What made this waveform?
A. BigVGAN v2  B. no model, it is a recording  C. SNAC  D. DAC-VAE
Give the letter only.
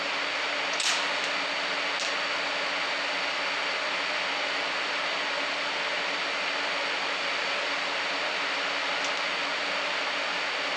B